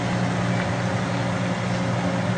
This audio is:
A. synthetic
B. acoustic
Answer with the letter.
B